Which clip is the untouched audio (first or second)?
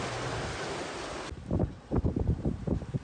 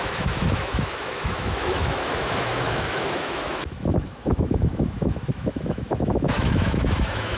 first